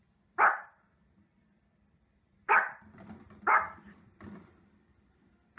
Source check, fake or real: fake